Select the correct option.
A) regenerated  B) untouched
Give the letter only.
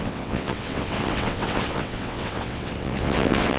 A